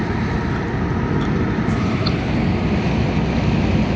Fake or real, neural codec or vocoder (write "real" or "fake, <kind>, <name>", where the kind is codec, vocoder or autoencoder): real